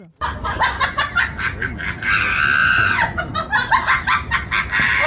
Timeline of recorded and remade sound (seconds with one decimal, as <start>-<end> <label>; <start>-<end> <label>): 0.0-0.4 recorded; 0.4-1.0 remade; 1.0-2.6 recorded; 2.6-3.2 remade; 3.2-5.1 recorded